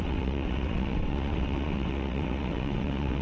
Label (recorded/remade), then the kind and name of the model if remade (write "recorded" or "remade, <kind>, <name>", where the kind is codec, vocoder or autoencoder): remade, vocoder, WaveNeXt